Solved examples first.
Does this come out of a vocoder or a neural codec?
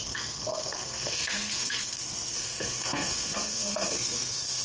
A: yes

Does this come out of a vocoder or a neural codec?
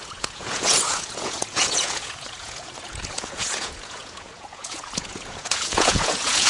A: yes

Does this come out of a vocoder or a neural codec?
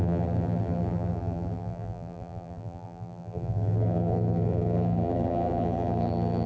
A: yes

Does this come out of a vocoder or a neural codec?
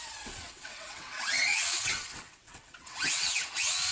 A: yes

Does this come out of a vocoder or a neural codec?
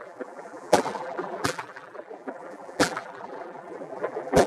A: yes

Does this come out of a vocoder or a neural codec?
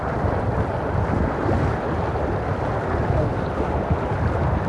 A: no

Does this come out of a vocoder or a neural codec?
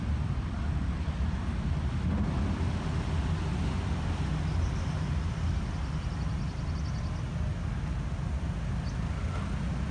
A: no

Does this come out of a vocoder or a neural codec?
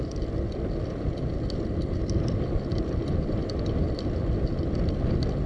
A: no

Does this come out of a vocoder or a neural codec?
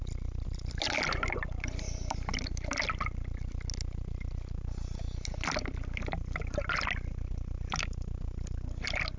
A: no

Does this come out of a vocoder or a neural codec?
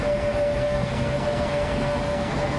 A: yes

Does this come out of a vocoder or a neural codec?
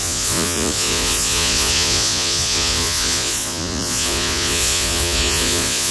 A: yes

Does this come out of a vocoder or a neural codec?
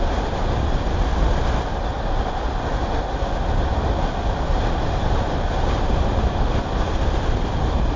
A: no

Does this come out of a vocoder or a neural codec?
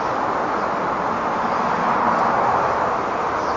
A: no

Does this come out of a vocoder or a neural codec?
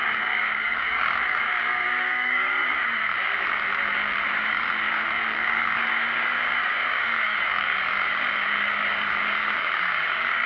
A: yes